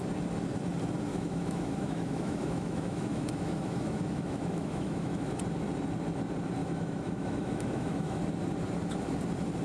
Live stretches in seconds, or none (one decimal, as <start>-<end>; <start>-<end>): 0.0-1.1; 5.4-6.6; 8.2-9.6